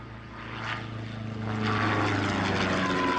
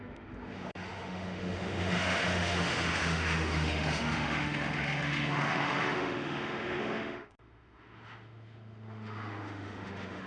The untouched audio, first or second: first